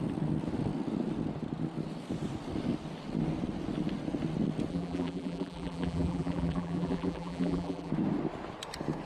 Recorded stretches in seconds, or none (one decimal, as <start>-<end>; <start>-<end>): 0.0-4.7; 7.9-9.1

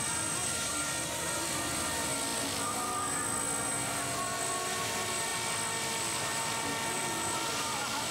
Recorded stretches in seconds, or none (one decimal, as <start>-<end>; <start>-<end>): 0.0-0.4; 0.9-8.1